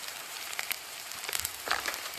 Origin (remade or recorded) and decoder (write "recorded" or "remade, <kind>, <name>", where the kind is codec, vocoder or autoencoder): remade, vocoder, BigVGAN v2